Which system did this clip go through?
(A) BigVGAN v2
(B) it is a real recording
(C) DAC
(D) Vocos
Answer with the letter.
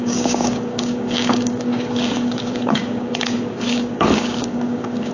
C